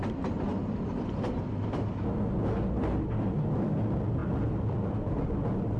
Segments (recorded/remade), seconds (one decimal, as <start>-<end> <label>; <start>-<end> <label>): 0.0-0.5 remade; 0.5-3.1 recorded; 3.1-5.8 remade